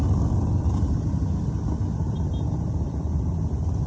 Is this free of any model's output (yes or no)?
yes